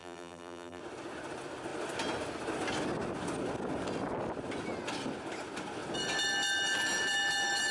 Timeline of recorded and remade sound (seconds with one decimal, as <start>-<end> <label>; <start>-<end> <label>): 0.0-0.8 remade; 0.8-7.7 recorded